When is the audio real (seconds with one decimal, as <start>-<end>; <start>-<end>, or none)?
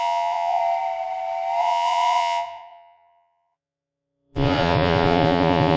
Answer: 0.6-1.6